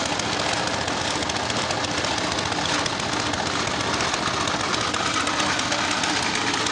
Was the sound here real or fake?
real